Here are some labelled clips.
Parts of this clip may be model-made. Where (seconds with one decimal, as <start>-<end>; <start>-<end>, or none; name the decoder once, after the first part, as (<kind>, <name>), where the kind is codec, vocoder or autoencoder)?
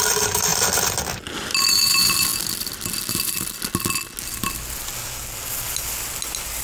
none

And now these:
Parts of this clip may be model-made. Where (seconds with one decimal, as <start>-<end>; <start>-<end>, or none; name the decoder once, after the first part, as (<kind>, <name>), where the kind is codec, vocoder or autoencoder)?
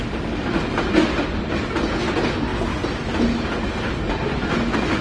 none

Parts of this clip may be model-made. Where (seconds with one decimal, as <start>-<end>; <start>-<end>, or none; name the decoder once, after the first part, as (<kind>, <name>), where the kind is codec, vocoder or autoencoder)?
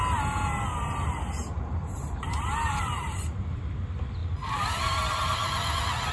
1.4-3.7 (vocoder, BigVGAN v2); 4.2-5.0